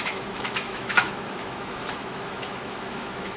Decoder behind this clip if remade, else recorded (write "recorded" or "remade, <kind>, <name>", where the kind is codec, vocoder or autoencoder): remade, autoencoder, DAC-VAE